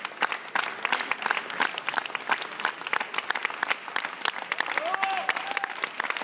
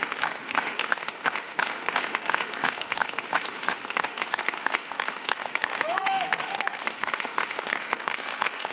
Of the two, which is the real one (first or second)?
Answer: first